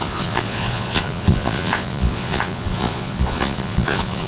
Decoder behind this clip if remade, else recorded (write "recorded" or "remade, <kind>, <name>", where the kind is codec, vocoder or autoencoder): remade, vocoder, Vocos